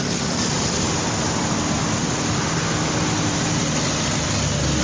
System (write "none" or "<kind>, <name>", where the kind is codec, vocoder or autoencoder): none